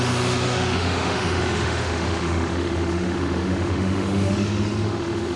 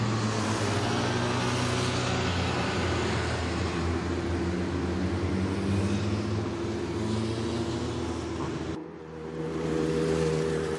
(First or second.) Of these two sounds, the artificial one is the first